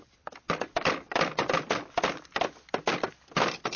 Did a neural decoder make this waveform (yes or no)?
no